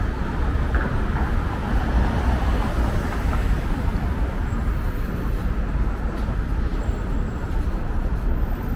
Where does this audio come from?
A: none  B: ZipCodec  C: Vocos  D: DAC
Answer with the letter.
A